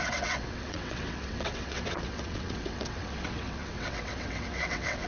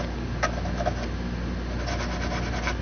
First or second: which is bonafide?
second